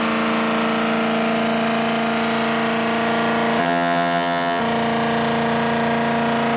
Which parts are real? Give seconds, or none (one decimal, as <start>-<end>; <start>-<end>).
0.0-3.6; 4.6-6.6